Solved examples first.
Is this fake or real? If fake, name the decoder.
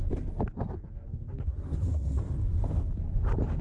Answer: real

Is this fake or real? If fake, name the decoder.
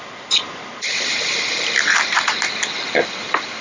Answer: real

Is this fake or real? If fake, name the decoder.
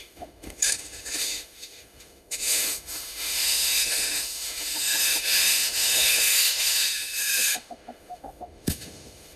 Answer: fake, autoencoder, DAC-VAE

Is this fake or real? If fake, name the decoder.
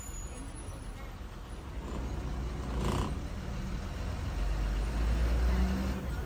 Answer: real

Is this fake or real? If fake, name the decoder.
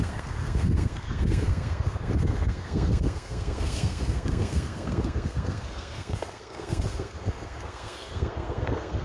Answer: fake, codec, SNAC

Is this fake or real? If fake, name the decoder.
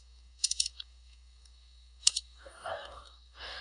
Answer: fake, codec, DAC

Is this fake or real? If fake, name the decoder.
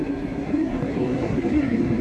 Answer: fake, codec, SNAC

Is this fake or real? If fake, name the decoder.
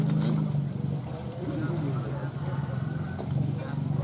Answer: real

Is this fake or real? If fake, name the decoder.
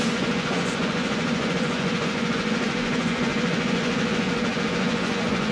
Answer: fake, vocoder, Vocos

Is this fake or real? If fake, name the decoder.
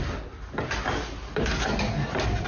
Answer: real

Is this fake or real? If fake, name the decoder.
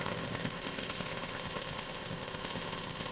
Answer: fake, codec, ZipCodec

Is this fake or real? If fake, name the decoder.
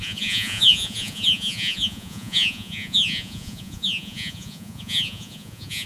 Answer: fake, vocoder, Vocos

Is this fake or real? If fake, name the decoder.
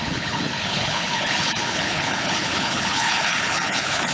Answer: fake, codec, HILCodec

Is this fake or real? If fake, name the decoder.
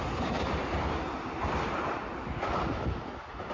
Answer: real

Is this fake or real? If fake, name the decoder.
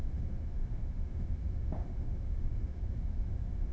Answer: fake, autoencoder, DAC-VAE